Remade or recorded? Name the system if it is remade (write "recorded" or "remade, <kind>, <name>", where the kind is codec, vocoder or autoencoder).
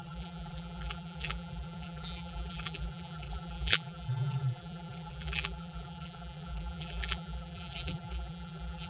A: remade, vocoder, BigVGAN v2